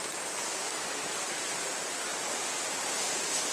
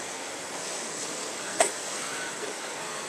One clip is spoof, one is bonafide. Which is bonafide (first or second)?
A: first